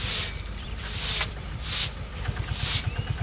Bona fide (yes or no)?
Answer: no